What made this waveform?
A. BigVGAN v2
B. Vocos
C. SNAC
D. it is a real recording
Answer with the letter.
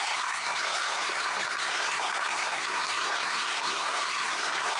C